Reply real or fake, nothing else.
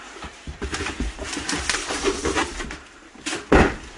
real